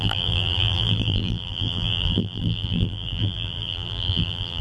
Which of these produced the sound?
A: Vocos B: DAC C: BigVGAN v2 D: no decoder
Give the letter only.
C